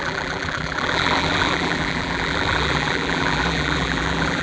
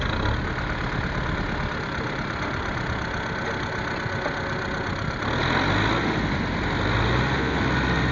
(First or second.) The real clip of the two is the second